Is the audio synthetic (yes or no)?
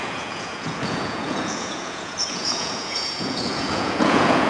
yes